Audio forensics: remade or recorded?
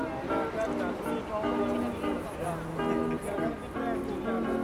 recorded